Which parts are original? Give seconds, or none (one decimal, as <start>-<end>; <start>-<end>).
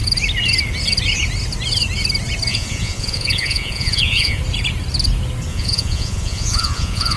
0.0-2.5; 4.4-5.5